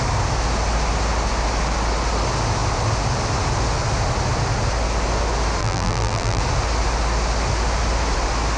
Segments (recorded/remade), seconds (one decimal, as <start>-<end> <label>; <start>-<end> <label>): 0.0-5.6 recorded; 5.6-6.4 remade; 6.4-8.6 recorded